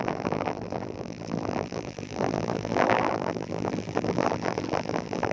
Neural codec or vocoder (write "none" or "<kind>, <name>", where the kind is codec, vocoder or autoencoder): vocoder, BigVGAN v2